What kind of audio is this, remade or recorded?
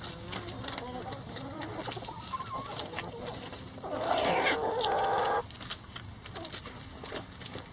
recorded